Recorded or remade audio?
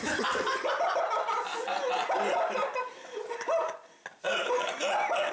recorded